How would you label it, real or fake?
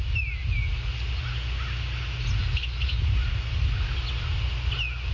real